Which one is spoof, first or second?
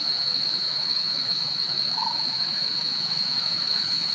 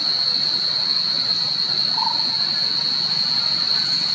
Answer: first